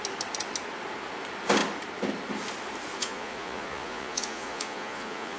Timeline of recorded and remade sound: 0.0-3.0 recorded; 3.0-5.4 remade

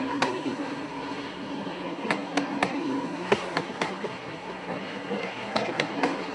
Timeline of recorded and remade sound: 0.0-6.3 remade

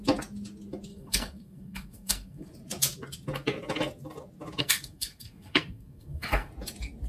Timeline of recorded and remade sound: 0.0-0.9 recorded; 0.9-2.5 remade; 2.5-4.6 recorded; 4.6-6.5 remade; 6.5-7.1 recorded

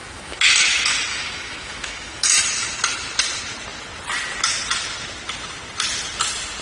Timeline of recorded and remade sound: 0.0-0.5 remade; 0.5-1.1 recorded; 1.1-2.4 remade; 2.4-6.6 recorded